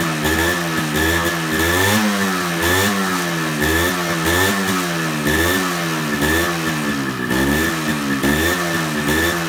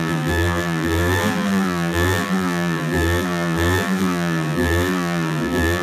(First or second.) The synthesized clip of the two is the second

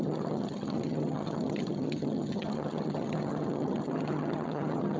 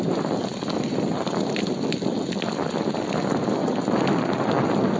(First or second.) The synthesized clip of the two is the first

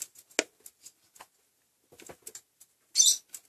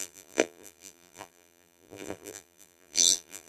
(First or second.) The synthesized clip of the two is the second